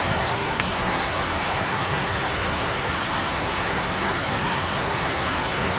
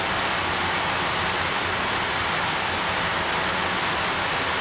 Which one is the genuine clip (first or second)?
second